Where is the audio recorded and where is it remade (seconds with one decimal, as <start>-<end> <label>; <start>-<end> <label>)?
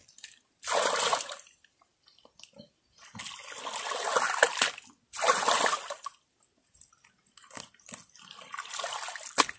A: 0.0-9.6 recorded